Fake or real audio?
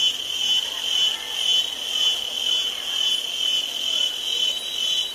real